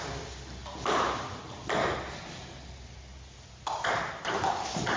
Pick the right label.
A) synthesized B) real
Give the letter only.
B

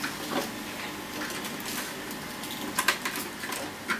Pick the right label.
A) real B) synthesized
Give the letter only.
A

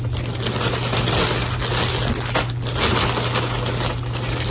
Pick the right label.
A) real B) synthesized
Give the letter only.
A